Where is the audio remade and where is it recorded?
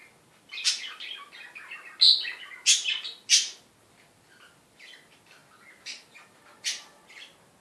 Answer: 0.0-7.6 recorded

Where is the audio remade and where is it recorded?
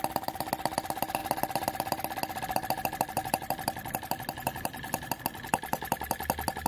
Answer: 0.0-1.2 recorded; 1.2-5.2 remade; 5.2-6.7 recorded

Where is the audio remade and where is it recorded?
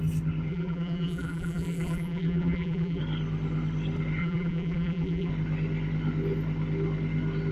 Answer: 0.0-0.5 recorded; 0.5-3.0 remade; 3.0-4.2 recorded; 4.2-5.3 remade; 5.3-7.5 recorded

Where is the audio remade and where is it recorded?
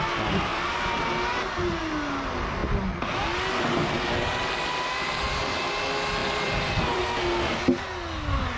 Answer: 0.0-0.5 recorded; 0.5-1.1 remade; 1.1-6.2 recorded; 6.2-7.0 remade; 7.0-8.6 recorded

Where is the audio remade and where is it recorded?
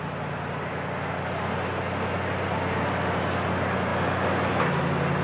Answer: 0.0-5.2 recorded